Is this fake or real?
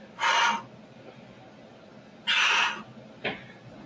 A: real